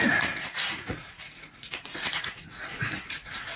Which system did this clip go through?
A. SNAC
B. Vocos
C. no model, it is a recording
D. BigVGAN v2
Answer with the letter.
B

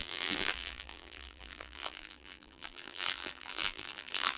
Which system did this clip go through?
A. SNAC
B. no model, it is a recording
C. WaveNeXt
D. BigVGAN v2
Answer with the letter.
D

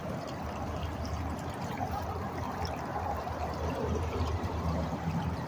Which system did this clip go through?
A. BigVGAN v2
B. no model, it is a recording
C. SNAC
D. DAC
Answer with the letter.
A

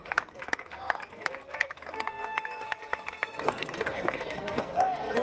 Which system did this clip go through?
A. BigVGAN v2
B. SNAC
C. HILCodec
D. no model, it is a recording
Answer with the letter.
B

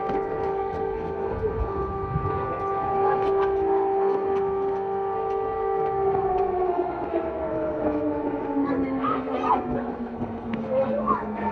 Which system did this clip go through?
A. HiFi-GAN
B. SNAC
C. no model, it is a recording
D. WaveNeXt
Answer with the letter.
B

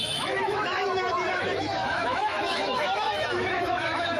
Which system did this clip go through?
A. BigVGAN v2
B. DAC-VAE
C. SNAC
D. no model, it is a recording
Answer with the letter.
B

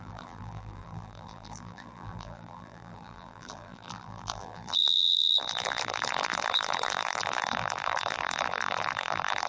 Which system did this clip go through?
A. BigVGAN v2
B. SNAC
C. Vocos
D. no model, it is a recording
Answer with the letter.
A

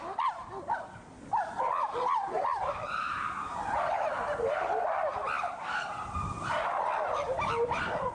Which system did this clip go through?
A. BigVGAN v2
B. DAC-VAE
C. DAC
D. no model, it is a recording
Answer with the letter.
D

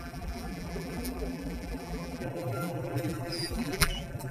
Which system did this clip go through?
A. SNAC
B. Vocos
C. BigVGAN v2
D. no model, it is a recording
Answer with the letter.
C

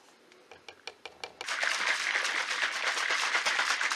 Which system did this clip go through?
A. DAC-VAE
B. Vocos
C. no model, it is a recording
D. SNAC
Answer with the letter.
C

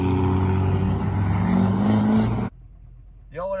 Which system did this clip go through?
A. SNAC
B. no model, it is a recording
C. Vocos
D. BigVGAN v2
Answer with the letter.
B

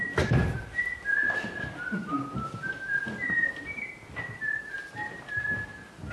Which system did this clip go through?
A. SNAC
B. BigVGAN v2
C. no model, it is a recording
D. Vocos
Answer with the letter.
C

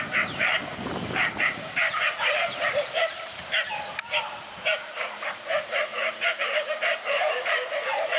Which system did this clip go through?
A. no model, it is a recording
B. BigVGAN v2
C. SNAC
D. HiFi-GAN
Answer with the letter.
B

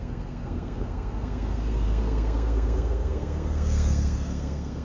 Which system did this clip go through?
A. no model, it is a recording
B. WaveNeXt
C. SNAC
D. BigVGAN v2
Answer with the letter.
C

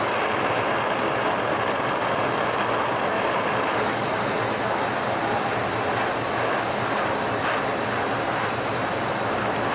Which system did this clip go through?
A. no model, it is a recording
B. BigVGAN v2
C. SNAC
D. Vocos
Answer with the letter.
A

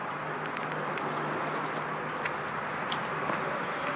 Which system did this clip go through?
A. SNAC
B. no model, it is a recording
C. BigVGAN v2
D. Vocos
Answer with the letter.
B